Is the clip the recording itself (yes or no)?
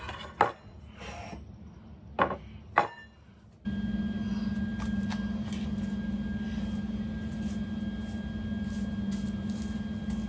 yes